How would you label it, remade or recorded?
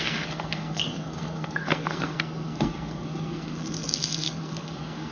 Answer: remade